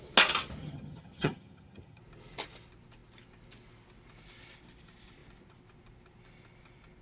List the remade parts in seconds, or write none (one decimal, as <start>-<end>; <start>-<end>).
0.6-2.0